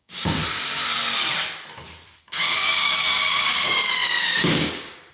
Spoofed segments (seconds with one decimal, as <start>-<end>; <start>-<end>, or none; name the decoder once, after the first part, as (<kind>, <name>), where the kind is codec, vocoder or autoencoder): 0.0-0.4 (codec, DAC); 2.2-5.1